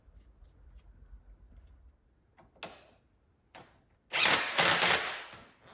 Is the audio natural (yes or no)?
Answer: yes